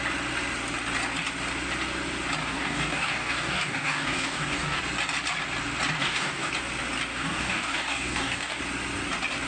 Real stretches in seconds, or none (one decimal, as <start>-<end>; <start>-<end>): 0.0-2.4; 4.8-6.0; 6.5-7.1; 8.6-9.5